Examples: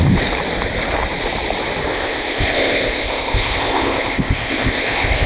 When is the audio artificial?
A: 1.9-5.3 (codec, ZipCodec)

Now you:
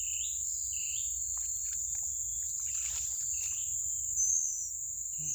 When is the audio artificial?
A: none

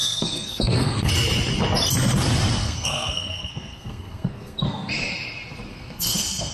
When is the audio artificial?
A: 0.0-1.1 (codec, SNAC); 2.6-4.9; 5.7-6.5

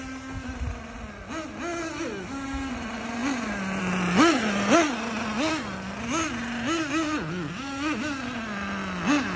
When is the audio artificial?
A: none

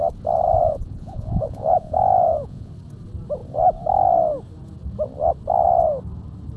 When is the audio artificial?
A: 0.6-2.7 (vocoder, Vocos)